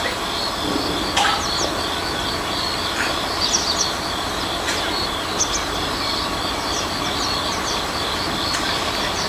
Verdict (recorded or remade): recorded